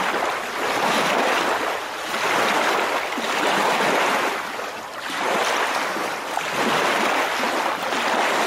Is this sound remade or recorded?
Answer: recorded